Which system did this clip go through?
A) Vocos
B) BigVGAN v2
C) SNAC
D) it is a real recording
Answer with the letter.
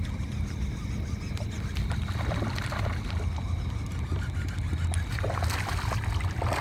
D